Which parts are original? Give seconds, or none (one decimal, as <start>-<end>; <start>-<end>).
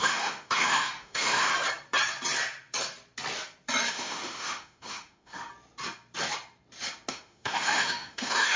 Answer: 1.5-3.9; 5.5-7.1